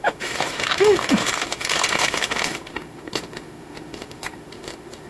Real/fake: fake